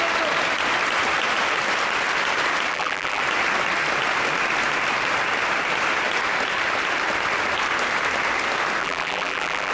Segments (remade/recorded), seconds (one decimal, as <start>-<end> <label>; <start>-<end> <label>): 0.0-2.7 recorded; 2.7-3.2 remade; 3.2-8.8 recorded; 8.8-9.7 remade